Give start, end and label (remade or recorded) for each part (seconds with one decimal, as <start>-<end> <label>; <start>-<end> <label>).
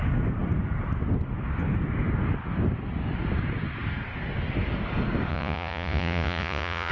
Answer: 0.0-5.3 recorded; 5.3-6.9 remade